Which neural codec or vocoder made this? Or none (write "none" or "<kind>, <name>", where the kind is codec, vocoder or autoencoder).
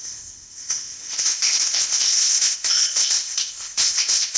codec, ZipCodec